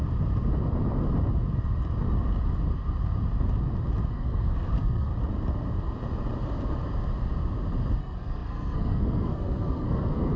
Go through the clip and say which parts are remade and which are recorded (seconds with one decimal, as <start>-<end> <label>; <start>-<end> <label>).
0.0-4.1 recorded; 4.1-5.1 remade; 5.1-8.0 recorded; 8.0-10.4 remade